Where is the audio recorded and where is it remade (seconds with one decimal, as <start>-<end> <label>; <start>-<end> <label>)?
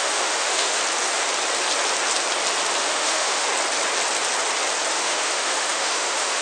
0.0-0.8 remade; 0.8-2.8 recorded; 2.8-3.5 remade; 3.5-4.9 recorded; 4.9-6.4 remade